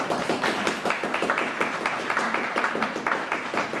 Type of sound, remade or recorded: recorded